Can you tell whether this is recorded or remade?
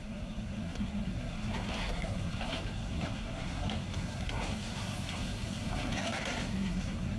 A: remade